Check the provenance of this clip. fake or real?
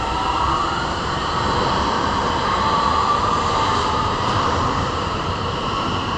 fake